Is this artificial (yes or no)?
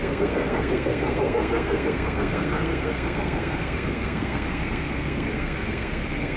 yes